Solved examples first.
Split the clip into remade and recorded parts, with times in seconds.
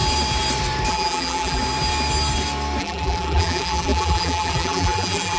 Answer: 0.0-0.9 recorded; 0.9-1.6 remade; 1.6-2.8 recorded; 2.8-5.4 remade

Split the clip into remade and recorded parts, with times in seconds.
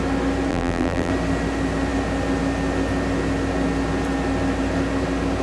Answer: 0.0-0.5 recorded; 0.5-1.1 remade; 1.1-5.4 recorded